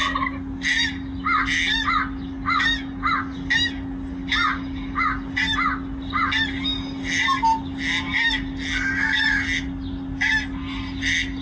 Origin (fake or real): real